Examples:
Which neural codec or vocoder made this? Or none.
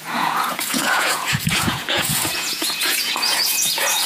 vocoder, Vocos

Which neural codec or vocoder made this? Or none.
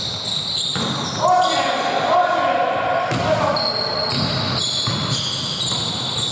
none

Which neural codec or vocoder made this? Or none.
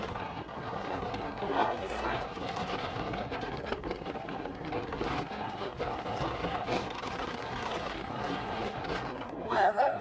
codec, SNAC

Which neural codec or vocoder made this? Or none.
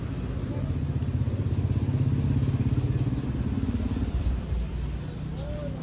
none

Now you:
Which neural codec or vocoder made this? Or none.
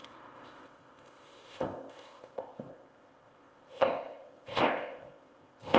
codec, ZipCodec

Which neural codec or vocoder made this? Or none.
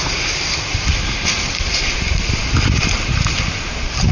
none